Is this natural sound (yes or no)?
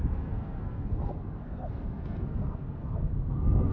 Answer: no